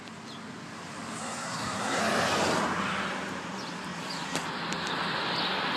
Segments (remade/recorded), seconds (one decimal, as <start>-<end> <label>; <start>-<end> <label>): 0.0-1.2 recorded; 1.2-2.0 remade; 2.0-5.8 recorded